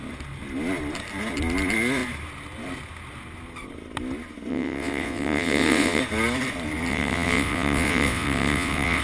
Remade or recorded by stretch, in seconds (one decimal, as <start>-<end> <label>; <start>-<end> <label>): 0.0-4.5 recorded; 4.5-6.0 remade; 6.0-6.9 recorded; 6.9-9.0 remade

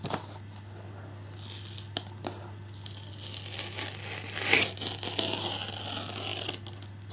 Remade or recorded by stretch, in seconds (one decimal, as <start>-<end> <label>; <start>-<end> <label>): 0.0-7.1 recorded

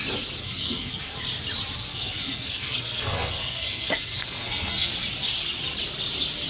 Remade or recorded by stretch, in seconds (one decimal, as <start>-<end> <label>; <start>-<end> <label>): 0.0-0.4 recorded; 0.4-1.2 remade; 1.2-1.9 recorded; 1.9-4.9 remade; 4.9-6.5 recorded

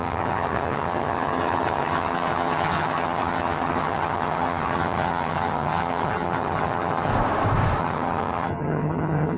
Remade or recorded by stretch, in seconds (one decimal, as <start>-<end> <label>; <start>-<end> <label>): 0.0-7.1 remade; 7.1-7.8 recorded; 7.8-9.4 remade

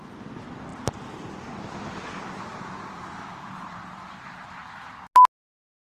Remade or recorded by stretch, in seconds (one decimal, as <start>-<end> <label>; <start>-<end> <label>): 0.0-0.7 recorded; 0.7-1.5 remade; 1.5-5.8 recorded

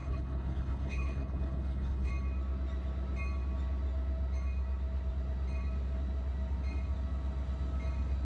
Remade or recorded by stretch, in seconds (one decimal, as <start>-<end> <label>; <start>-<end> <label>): 0.0-2.1 remade; 2.1-8.2 recorded

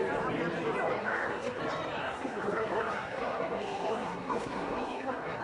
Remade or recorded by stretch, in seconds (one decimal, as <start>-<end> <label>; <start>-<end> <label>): 0.0-1.0 recorded; 1.0-1.6 remade; 1.6-2.0 recorded; 2.0-5.4 remade

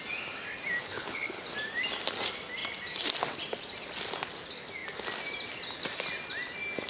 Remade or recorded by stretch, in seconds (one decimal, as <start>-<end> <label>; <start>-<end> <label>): 0.0-0.8 recorded; 0.8-1.4 remade; 1.4-6.9 recorded